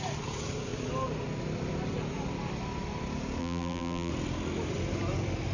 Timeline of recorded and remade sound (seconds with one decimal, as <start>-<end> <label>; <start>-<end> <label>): 0.0-3.4 recorded; 3.4-4.1 remade; 4.1-5.5 recorded